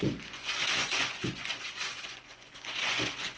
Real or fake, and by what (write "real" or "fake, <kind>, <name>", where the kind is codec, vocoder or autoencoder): fake, vocoder, Vocos